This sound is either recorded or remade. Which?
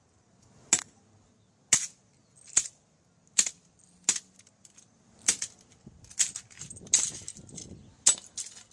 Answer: recorded